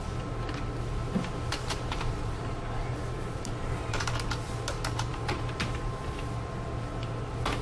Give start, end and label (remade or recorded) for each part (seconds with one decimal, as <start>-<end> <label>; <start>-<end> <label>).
0.0-1.5 recorded; 1.5-4.1 remade; 4.1-5.1 recorded; 5.1-5.6 remade; 5.6-7.6 recorded